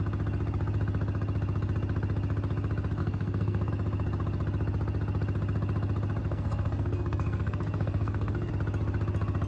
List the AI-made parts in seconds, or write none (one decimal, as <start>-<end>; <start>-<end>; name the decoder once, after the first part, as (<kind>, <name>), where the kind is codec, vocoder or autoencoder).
3.0-3.7 (codec, SNAC); 6.2-8.5